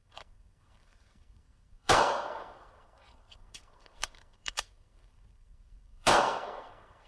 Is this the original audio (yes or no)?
no